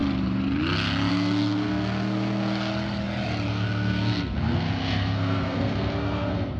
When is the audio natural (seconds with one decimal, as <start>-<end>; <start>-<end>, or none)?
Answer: 0.0-1.1; 2.7-3.5